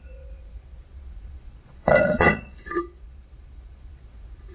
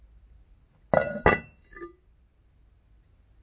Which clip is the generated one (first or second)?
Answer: first